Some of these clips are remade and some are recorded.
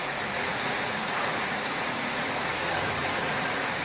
remade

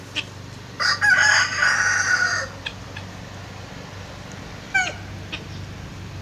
recorded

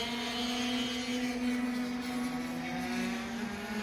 recorded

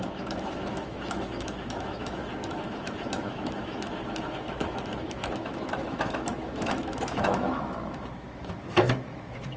remade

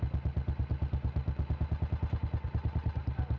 recorded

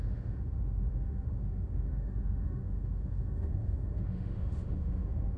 remade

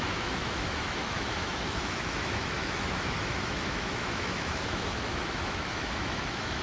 remade